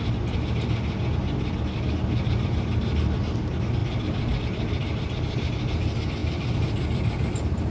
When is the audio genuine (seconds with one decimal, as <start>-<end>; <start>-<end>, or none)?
0.0-7.7

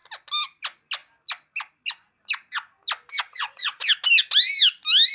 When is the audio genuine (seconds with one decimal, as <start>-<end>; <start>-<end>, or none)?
0.0-3.1; 3.8-5.1

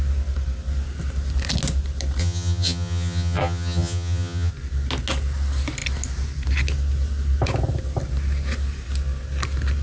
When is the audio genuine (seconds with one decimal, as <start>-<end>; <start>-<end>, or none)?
0.0-2.2; 4.5-9.8

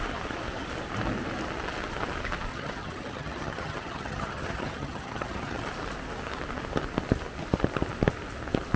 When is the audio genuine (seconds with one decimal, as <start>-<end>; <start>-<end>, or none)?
0.0-2.5; 5.7-8.8

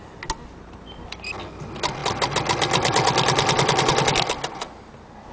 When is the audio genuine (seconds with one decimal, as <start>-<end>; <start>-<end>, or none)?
0.0-5.3